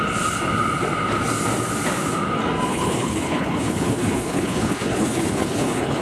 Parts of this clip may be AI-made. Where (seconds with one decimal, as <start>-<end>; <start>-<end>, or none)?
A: 2.7-6.0